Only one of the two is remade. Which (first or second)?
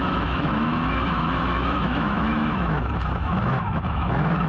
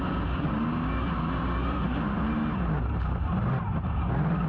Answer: first